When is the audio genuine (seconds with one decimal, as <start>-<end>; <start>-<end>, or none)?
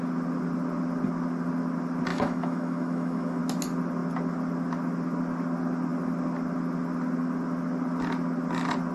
0.0-2.1; 3.4-8.9